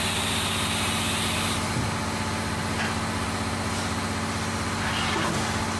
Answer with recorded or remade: recorded